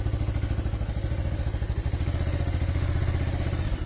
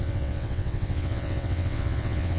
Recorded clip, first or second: first